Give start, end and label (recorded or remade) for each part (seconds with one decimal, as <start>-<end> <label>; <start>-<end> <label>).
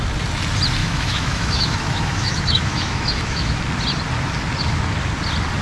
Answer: 0.0-0.8 recorded; 0.8-3.6 remade; 3.6-5.6 recorded